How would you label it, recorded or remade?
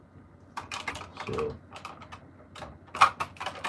recorded